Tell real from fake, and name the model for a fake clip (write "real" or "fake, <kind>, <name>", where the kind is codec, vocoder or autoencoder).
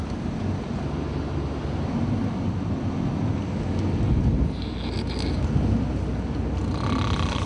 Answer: real